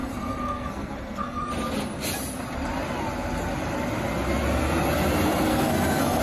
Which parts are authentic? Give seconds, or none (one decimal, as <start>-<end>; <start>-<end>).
1.5-5.5